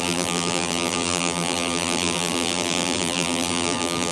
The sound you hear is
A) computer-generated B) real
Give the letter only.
A